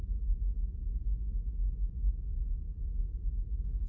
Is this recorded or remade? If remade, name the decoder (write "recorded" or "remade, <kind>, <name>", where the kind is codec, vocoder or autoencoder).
recorded